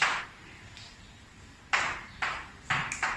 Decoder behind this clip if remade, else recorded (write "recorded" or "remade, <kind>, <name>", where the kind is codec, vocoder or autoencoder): recorded